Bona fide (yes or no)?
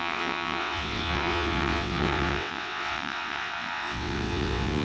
no